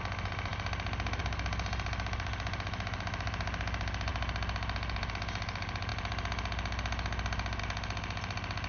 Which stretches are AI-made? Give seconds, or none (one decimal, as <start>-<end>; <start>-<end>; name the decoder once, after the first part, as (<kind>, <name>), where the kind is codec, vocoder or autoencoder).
none